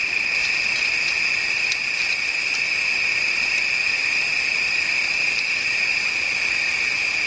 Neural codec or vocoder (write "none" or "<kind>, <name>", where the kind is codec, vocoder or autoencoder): none